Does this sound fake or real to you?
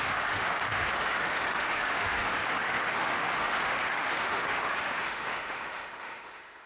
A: fake